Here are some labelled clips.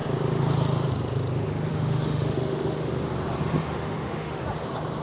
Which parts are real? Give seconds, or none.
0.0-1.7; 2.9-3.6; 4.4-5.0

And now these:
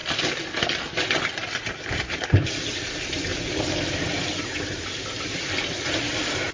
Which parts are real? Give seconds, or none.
0.0-1.4; 2.7-3.3